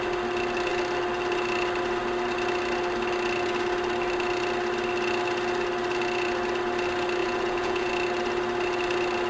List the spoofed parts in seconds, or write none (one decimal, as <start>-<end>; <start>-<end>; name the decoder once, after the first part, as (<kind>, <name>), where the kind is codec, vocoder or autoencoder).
7.2-7.9 (vocoder, Vocos)